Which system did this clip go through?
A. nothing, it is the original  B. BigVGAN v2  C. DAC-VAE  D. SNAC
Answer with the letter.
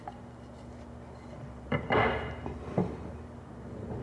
B